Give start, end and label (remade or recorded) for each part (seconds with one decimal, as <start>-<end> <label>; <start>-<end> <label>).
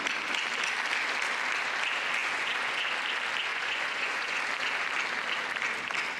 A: 0.0-2.2 recorded; 2.2-2.9 remade; 2.9-3.5 recorded; 3.5-4.4 remade; 4.4-6.2 recorded